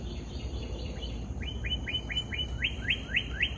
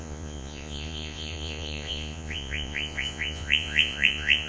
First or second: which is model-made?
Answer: second